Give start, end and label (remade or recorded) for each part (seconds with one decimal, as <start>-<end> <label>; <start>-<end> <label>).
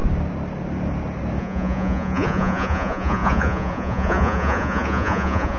0.0-1.4 recorded; 1.4-5.6 remade